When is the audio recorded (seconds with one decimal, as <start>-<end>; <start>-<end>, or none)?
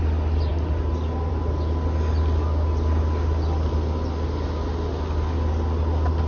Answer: 0.0-6.3